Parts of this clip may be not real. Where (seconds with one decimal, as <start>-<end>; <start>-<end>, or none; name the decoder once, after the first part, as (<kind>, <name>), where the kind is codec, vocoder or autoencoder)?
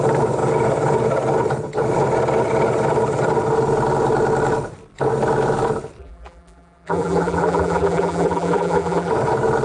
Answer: 6.0-9.1 (vocoder, BigVGAN v2)